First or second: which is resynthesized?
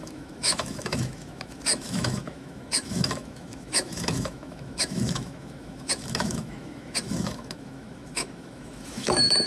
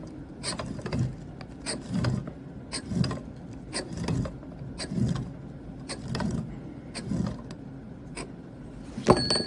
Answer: first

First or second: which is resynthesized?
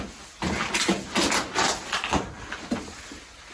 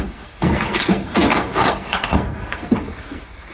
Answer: second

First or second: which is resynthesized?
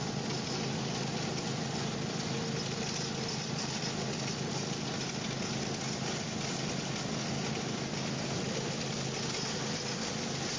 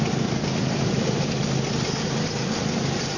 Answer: second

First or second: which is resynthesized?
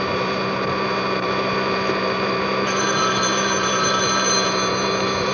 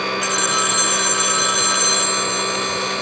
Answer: first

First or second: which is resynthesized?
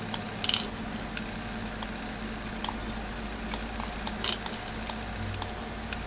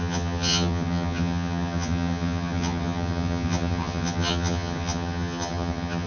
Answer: second